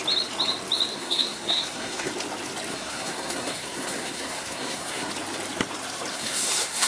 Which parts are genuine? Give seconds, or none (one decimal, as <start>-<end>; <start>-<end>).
0.0-0.9; 2.1-2.7; 5.1-6.1